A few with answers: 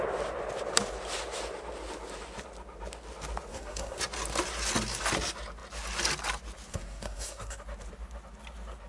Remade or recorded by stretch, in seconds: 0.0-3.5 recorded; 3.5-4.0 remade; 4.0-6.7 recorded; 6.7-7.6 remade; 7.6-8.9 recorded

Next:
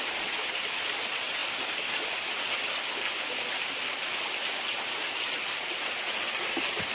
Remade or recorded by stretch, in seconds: 0.0-6.9 recorded

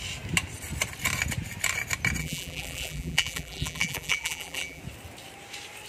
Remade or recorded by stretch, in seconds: 0.0-2.2 recorded; 2.2-4.8 remade; 4.8-5.9 recorded

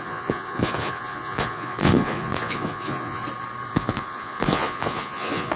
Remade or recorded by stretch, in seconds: 0.0-3.2 remade; 3.2-3.7 recorded; 3.7-5.6 remade

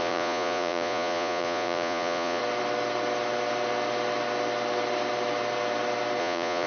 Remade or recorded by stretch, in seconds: 0.0-2.4 remade; 2.4-6.2 recorded; 6.2-6.7 remade

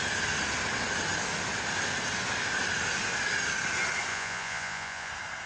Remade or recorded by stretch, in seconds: 0.0-4.1 recorded; 4.1-5.1 remade; 5.1-5.5 recorded

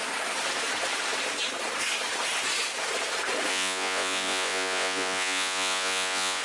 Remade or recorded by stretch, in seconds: 0.0-3.5 recorded; 3.5-6.4 remade